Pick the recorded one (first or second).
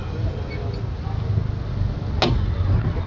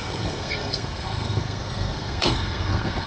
first